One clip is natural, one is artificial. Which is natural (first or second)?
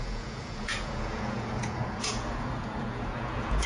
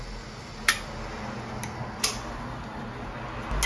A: second